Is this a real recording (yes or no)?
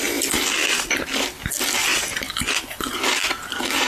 yes